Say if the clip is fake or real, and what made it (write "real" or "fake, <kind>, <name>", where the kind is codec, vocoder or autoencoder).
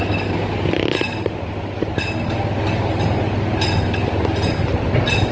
real